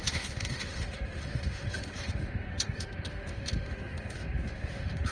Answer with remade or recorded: remade